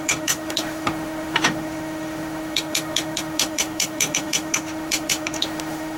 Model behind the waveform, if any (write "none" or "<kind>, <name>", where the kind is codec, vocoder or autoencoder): autoencoder, DAC-VAE